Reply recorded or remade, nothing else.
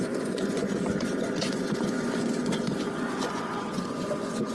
remade